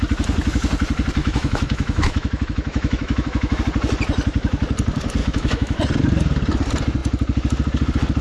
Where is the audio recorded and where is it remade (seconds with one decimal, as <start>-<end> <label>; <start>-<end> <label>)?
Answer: 0.0-1.2 recorded; 1.2-3.6 remade; 3.6-5.2 recorded; 5.2-5.8 remade; 5.8-8.2 recorded